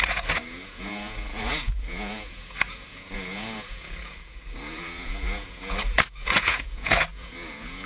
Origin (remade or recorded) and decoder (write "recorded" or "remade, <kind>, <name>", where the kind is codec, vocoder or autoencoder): remade, vocoder, Vocos